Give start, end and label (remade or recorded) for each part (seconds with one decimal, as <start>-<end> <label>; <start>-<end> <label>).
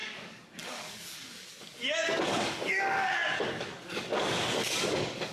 0.0-5.3 remade